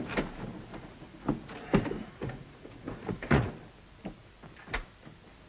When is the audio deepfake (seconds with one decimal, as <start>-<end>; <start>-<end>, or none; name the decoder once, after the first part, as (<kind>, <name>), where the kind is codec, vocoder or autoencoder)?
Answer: 0.7-1.3 (vocoder, Vocos); 2.0-3.5